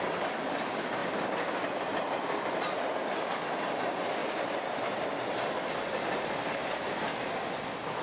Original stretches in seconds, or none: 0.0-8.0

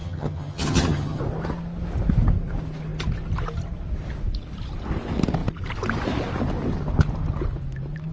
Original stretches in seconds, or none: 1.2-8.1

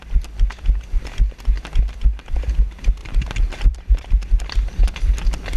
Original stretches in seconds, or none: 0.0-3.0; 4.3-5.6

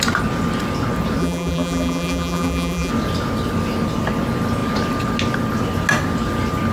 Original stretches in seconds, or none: 0.0-1.2; 2.9-6.7